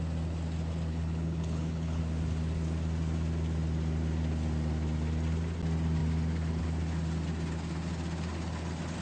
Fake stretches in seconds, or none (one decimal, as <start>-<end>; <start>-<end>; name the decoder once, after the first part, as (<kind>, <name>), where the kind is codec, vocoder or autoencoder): 0.9-2.0 (codec, HILCodec)